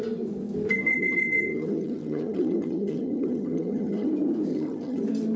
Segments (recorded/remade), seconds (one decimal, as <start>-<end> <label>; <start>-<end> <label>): 0.0-0.9 recorded; 0.9-4.1 remade; 4.1-4.5 recorded; 4.5-5.0 remade; 5.0-5.4 recorded